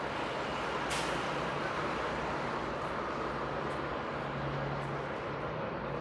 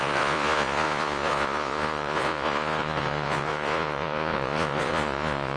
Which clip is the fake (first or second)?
second